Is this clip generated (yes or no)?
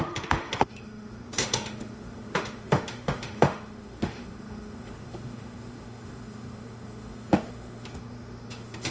yes